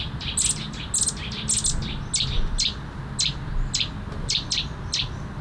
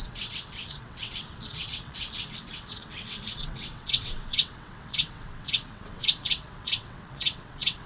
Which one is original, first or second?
first